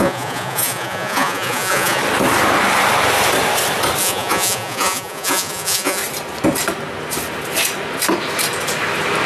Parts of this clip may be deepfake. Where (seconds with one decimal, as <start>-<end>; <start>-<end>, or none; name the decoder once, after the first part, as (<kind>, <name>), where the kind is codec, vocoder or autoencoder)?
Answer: 0.0-2.0 (vocoder, Vocos); 4.0-6.0